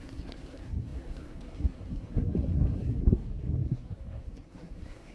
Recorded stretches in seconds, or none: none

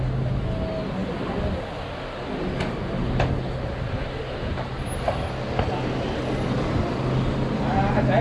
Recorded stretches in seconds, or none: 0.0-8.2

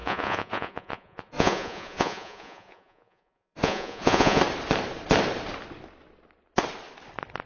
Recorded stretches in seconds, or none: 4.4-7.5

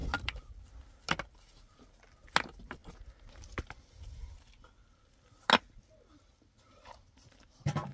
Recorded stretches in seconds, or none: 0.0-7.9

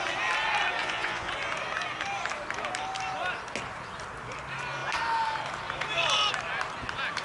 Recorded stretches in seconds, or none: 0.0-0.8; 1.3-7.2

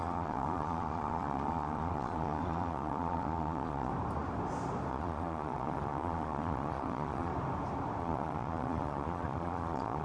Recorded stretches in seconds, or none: 3.9-4.9; 7.3-8.0

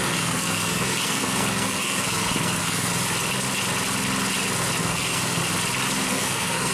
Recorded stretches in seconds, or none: 2.9-4.8; 5.4-6.1

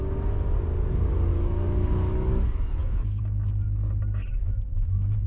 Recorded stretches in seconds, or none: 0.0-1.3; 3.2-4.4